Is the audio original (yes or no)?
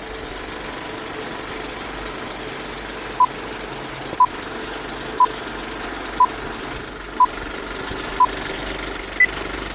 yes